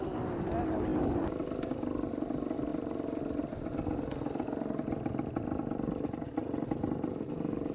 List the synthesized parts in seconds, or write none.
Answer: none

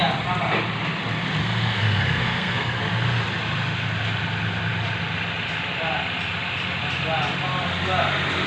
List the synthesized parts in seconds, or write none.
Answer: 1.4-2.8 (codec, SNAC)

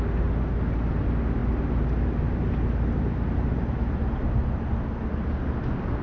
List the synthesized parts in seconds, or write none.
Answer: none

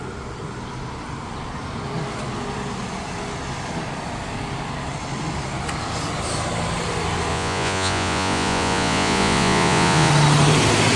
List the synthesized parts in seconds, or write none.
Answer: 7.3-10.1 (vocoder, Vocos)

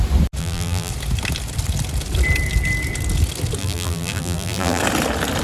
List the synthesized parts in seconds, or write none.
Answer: 0.4-0.9 (vocoder, BigVGAN v2); 3.6-4.8

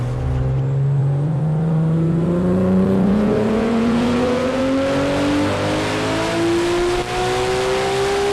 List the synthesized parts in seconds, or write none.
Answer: 1.0-4.6 (vocoder, Vocos)

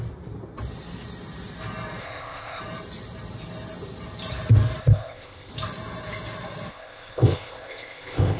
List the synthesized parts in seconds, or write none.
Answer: 2.0-2.6 (codec, ZipCodec); 4.8-5.5; 6.7-8.4

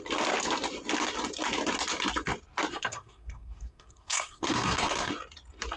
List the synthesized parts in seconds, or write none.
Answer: 2.7-5.1 (codec, SNAC)